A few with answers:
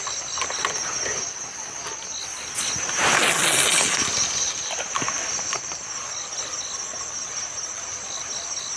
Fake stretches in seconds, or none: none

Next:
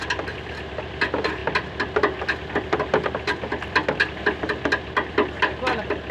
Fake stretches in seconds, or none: none

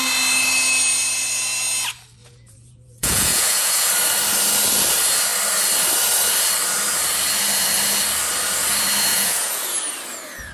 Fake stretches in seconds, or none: 2.2-3.9 (vocoder, Vocos); 9.1-9.8

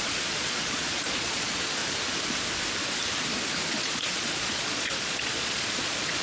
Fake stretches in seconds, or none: 0.0-1.8 (vocoder, Vocos); 3.7-6.2

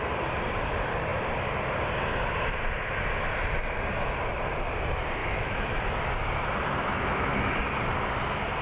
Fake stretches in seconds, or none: 5.2-5.8 (autoencoder, DAC-VAE); 6.8-7.5

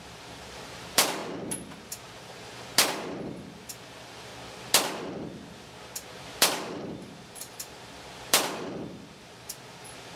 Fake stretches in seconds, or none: 0.0-1.2 (vocoder, BigVGAN v2); 1.9-2.7; 3.7-4.3; 6.2-10.2

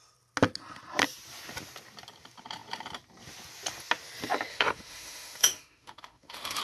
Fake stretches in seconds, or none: 4.5-6.6 (autoencoder, DAC-VAE)